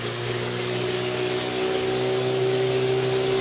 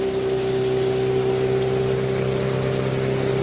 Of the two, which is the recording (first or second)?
second